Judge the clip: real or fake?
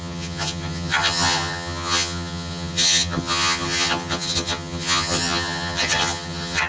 fake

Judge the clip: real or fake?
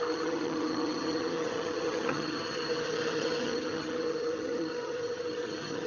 fake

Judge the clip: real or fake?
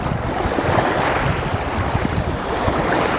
real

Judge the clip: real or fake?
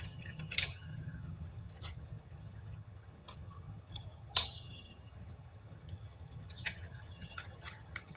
fake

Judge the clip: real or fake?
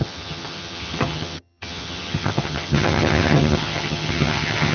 fake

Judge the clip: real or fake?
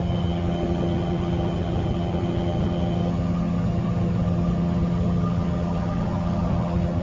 fake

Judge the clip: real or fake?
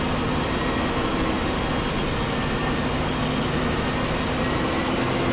real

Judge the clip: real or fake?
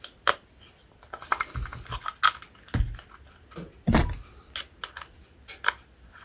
real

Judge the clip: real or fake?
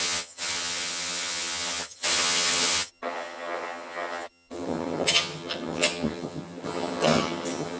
fake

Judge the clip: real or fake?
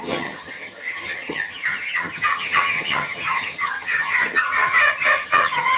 fake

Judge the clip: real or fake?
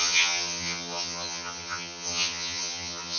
fake